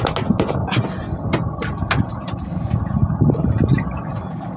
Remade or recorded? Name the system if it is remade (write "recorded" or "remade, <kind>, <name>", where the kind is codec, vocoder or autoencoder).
recorded